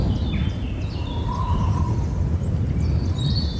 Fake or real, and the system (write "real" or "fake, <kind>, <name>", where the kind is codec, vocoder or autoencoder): real